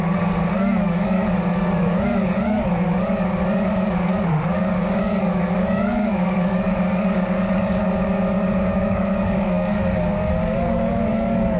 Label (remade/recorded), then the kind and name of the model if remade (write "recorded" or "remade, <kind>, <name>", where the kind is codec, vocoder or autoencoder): remade, codec, DAC